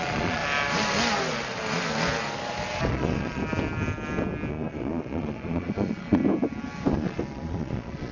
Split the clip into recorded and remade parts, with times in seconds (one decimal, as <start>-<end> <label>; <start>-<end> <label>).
0.0-0.4 remade; 0.4-2.9 recorded; 2.9-3.4 remade; 3.4-4.5 recorded; 4.5-6.2 remade; 6.2-6.9 recorded; 6.9-8.1 remade